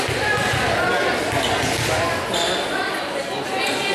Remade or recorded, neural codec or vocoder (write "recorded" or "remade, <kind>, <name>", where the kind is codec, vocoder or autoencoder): recorded